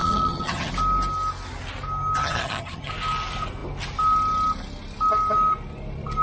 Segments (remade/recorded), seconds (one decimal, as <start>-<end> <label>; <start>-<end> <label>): 0.0-0.7 remade; 0.7-2.2 recorded; 2.2-2.9 remade; 2.9-6.2 recorded

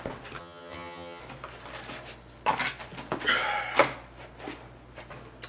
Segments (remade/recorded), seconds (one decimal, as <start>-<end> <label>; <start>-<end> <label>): 0.0-0.4 recorded; 0.4-1.2 remade; 1.2-5.5 recorded

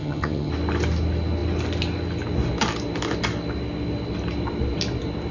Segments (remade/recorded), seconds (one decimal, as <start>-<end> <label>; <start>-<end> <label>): 0.0-0.5 remade; 0.5-5.3 recorded

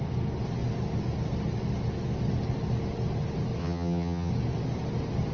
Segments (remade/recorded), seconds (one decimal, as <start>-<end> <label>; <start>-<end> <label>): 0.0-3.6 recorded; 3.6-4.3 remade; 4.3-5.3 recorded